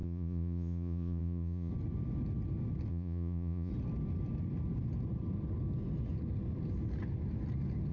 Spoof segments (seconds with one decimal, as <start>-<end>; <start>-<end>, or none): 0.0-1.7; 2.9-3.7